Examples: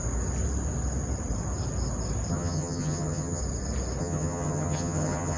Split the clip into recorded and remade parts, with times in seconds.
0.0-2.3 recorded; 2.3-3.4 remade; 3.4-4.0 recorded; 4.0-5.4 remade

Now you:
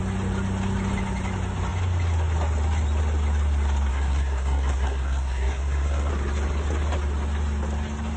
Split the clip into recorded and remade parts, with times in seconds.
0.0-3.9 recorded; 3.9-6.1 remade; 6.1-8.2 recorded